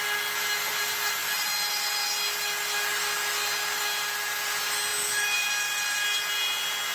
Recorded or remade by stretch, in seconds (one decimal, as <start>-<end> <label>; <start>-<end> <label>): 0.0-1.2 recorded; 1.2-2.0 remade; 2.0-6.9 recorded